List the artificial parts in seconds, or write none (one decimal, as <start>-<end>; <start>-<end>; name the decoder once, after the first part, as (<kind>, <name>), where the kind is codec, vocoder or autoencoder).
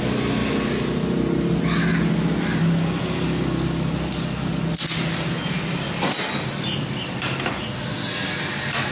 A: none